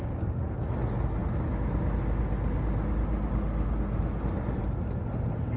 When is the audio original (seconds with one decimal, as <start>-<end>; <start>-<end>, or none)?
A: 0.0-5.6